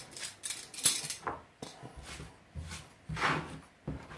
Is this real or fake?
real